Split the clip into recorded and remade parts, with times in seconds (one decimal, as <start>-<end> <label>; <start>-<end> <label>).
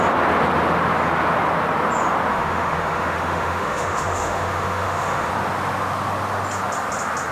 0.0-2.3 recorded; 2.3-5.3 remade; 5.3-7.3 recorded